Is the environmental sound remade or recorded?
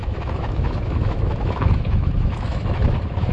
remade